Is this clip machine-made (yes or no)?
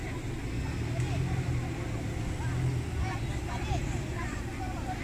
no